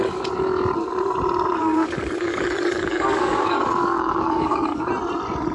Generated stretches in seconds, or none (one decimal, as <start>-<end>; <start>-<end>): 1.6-4.9